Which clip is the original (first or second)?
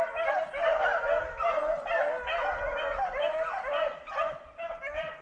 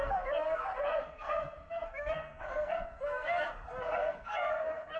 first